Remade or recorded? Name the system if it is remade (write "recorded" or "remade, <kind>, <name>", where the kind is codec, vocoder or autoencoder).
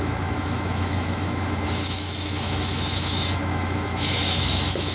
remade, autoencoder, DAC-VAE